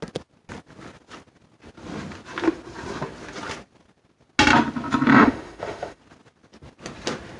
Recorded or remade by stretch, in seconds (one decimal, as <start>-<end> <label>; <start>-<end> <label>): 0.0-5.1 recorded; 5.1-6.0 remade; 6.0-7.4 recorded